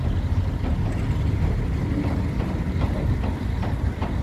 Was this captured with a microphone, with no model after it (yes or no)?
yes